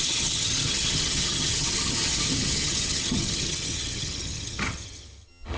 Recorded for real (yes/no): no